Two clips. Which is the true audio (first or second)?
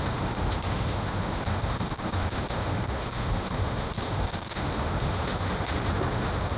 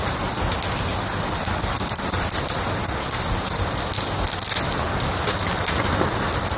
second